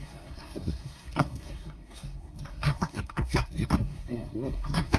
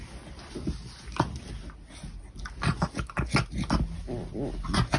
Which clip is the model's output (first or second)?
first